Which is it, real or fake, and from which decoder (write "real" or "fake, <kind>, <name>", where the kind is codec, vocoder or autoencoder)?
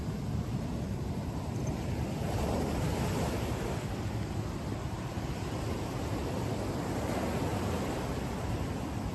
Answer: real